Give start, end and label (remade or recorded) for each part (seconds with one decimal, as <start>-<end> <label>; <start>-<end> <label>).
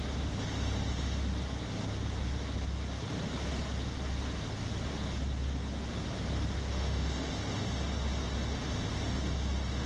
0.0-6.6 recorded; 6.6-7.3 remade; 7.3-9.9 recorded